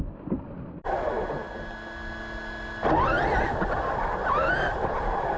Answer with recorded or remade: recorded